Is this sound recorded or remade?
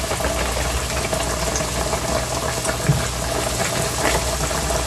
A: recorded